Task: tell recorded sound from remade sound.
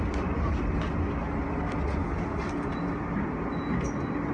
recorded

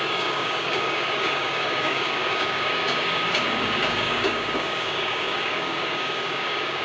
remade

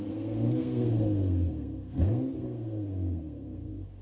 remade